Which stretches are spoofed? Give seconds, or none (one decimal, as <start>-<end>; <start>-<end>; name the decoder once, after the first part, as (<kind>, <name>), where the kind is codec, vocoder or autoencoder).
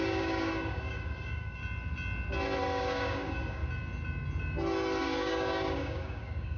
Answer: 0.0-1.6 (codec, DAC); 2.6-3.6; 5.0-6.6